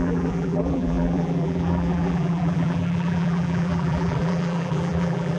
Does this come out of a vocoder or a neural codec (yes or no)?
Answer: yes